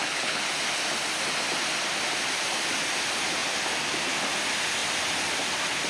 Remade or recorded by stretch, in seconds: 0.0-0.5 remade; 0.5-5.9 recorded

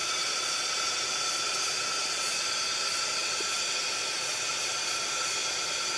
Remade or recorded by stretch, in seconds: 0.0-0.7 remade; 0.7-6.0 recorded